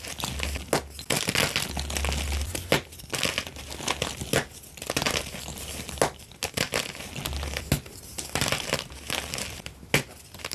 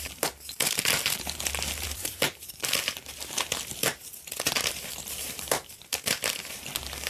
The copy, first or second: second